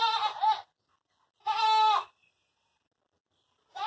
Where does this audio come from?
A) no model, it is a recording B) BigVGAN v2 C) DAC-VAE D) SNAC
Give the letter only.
A